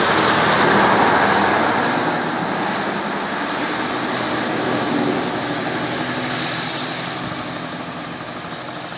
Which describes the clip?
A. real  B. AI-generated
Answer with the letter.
A